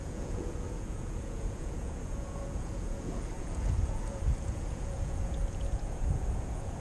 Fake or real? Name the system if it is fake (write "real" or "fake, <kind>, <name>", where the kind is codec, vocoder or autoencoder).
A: fake, vocoder, Vocos